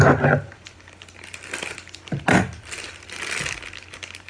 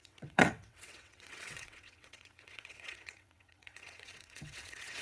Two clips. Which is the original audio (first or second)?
first